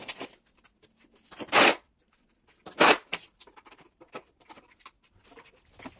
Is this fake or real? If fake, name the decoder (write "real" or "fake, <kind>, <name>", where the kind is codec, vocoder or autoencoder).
fake, vocoder, BigVGAN v2